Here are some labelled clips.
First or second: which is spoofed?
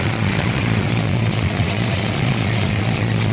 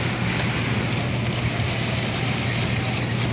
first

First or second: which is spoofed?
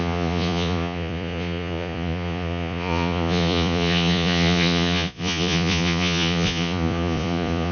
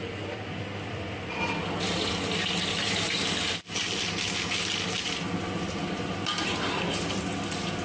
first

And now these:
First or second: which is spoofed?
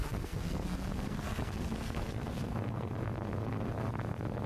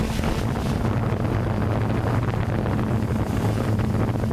first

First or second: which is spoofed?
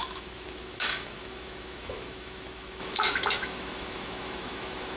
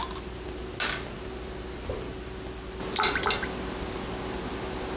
first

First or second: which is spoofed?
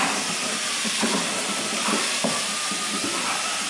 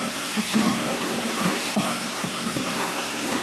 second